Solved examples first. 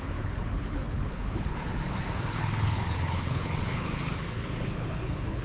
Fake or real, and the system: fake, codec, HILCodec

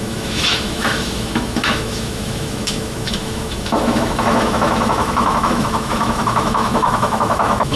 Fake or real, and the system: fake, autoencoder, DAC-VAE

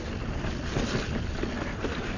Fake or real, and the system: real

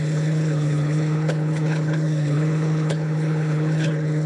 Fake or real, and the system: fake, codec, HILCodec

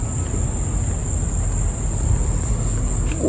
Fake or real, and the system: real